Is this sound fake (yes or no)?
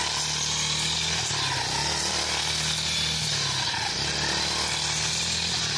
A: no